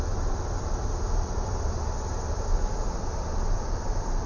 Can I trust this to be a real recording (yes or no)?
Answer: yes